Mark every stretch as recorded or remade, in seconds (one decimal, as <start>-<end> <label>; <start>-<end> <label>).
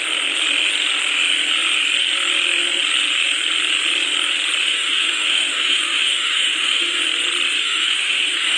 0.0-4.6 recorded; 4.6-7.0 remade; 7.0-7.6 recorded; 7.6-8.6 remade